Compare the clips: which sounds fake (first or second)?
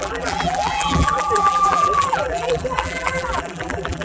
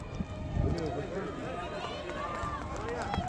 first